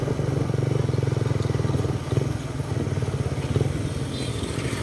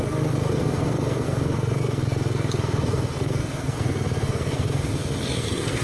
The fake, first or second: second